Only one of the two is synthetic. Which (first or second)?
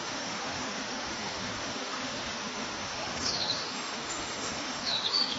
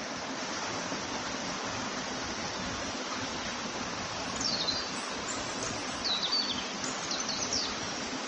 first